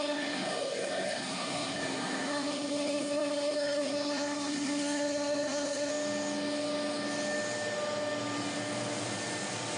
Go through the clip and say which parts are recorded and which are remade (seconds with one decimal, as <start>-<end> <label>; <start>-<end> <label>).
0.0-5.9 remade; 5.9-9.8 recorded